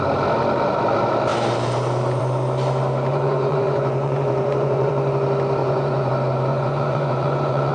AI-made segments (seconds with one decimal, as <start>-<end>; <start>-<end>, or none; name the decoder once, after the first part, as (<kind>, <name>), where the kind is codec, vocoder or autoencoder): 3.1-4.9 (vocoder, Vocos); 5.6-6.1; 6.5-7.7